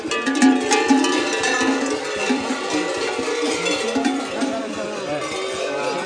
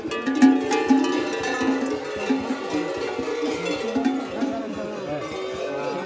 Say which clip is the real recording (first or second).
second